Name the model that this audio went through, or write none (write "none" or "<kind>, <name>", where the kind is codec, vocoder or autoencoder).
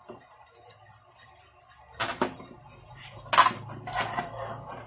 none